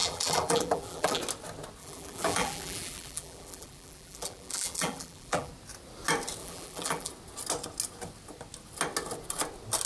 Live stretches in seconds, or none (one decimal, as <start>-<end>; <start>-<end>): 1.2-1.8; 5.5-6.4; 7.1-9.9